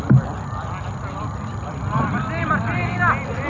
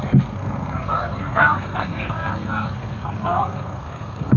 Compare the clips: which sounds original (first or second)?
first